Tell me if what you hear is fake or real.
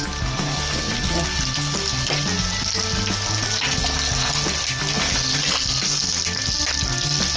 real